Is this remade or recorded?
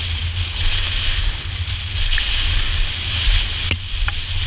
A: recorded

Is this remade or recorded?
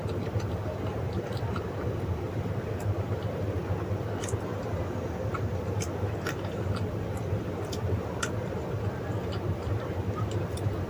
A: remade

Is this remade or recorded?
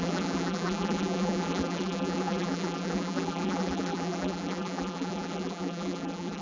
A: remade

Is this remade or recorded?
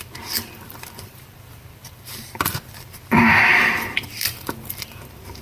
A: remade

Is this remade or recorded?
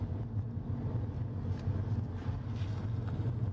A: recorded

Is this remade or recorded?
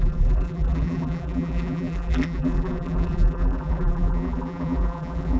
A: remade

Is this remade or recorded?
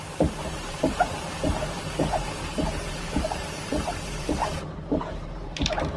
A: remade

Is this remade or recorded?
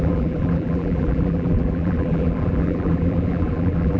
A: remade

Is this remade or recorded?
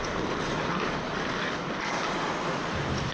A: remade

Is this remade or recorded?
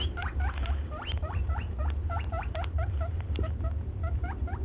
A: remade